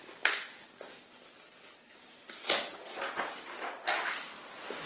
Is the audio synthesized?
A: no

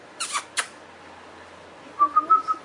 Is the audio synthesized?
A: no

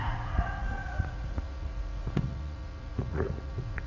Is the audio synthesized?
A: yes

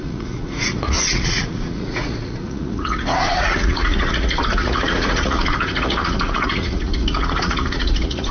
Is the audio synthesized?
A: yes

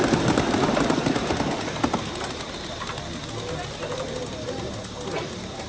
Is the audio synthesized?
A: no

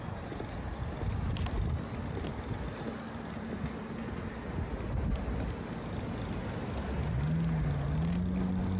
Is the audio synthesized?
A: no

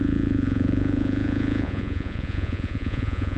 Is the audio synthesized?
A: yes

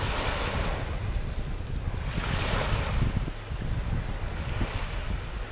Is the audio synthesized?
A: no